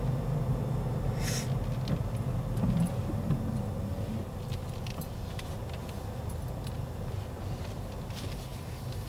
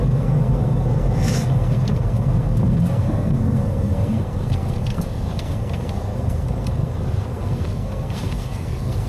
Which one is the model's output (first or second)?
second